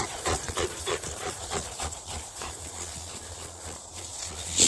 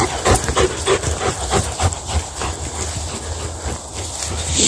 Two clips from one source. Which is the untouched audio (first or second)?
second